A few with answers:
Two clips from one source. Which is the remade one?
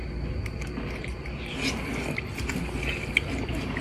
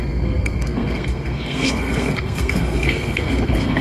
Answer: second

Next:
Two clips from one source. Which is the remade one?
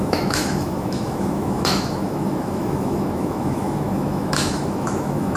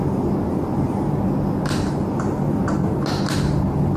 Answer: first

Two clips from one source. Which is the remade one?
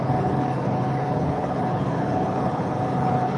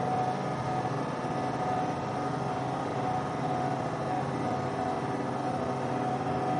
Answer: first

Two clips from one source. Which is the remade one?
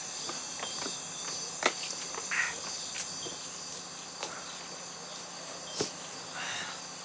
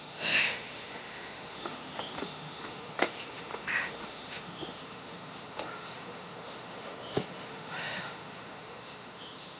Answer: second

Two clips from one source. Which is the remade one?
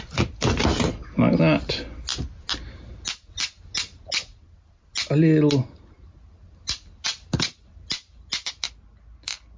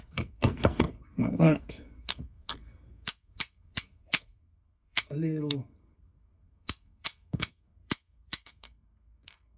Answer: second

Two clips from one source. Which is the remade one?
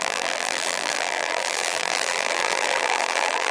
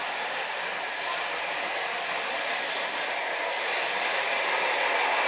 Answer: first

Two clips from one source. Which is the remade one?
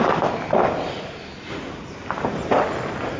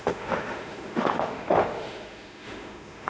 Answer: second